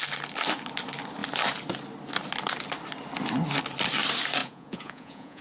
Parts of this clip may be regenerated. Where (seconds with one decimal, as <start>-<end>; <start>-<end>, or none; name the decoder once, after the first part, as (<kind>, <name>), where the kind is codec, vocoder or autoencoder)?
4.4-5.4 (vocoder, Vocos)